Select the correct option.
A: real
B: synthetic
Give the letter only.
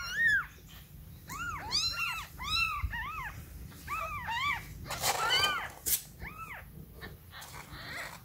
A